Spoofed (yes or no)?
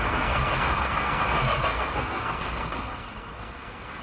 yes